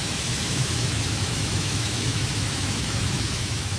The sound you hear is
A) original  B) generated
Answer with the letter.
B